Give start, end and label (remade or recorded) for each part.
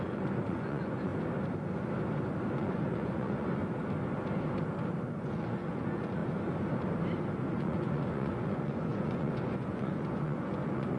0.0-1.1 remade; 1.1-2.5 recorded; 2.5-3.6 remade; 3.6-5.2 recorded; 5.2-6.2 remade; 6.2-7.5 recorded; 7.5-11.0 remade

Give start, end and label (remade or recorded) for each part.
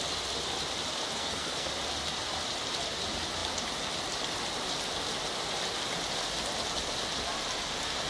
0.0-1.2 recorded; 1.2-1.7 remade; 1.7-8.1 recorded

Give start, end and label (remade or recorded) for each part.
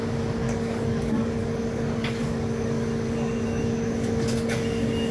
0.0-5.1 remade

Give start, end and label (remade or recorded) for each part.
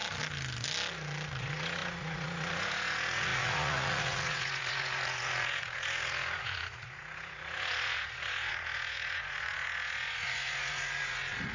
0.0-1.4 recorded; 1.4-11.5 remade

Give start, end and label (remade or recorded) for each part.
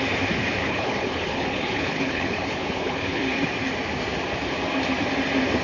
0.0-0.6 recorded; 0.6-3.2 remade; 3.2-5.6 recorded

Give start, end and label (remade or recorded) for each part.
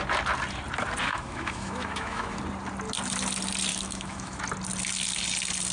0.0-1.1 recorded; 1.1-2.4 remade; 2.4-3.7 recorded; 3.7-4.4 remade; 4.4-5.7 recorded